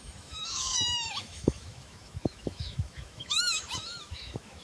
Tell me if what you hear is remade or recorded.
remade